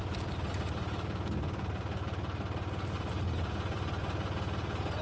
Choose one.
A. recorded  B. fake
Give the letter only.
A